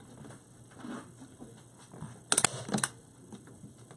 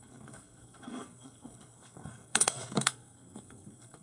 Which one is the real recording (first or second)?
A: first